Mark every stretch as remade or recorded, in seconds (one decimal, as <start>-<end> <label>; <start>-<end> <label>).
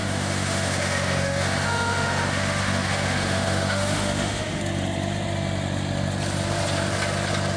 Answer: 0.0-4.6 remade; 4.6-7.6 recorded